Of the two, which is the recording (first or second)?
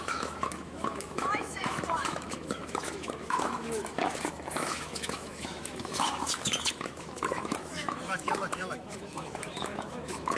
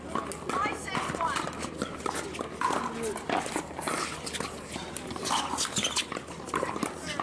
second